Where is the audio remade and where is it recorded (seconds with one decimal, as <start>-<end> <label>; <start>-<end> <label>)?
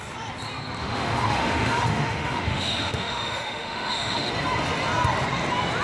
0.0-0.8 recorded; 0.8-4.3 remade; 4.3-5.8 recorded